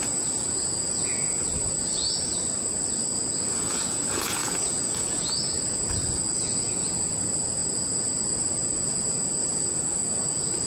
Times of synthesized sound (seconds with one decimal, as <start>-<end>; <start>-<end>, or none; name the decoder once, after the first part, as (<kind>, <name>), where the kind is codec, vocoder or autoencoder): 0.0-2.3 (vocoder, Vocos); 3.1-10.7

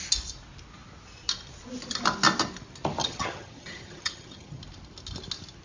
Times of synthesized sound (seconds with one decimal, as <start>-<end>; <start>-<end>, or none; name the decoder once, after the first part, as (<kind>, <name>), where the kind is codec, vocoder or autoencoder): 3.0-4.6 (vocoder, HiFi-GAN)

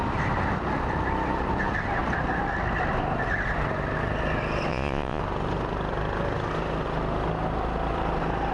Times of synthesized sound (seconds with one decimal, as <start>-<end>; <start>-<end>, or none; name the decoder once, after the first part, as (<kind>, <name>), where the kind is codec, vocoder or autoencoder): 4.7-5.2 (vocoder, Vocos)

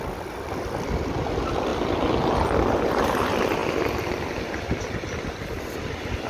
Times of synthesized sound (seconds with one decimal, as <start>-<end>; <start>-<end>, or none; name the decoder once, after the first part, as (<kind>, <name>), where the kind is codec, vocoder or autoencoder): 3.6-5.7 (vocoder, BigVGAN v2)

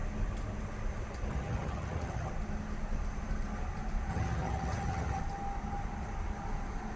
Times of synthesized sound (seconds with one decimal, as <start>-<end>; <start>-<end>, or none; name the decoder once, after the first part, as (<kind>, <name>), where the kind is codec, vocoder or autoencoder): 1.3-2.3 (vocoder, HiFi-GAN); 4.1-5.2